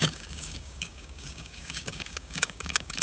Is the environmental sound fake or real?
fake